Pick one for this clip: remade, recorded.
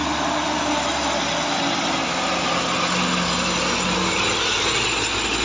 recorded